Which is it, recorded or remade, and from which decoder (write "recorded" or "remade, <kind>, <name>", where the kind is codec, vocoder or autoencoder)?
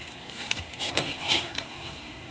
remade, codec, SNAC